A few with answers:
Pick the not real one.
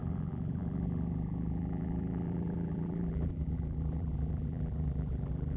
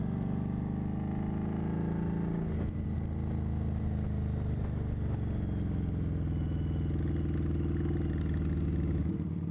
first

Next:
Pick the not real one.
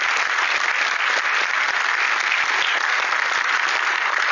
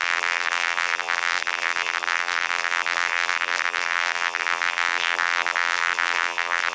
second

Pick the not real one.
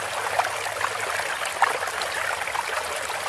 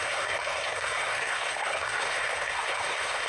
second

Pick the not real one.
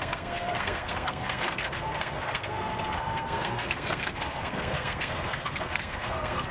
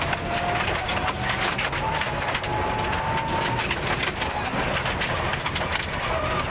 first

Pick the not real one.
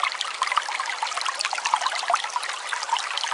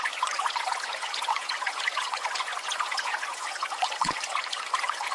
second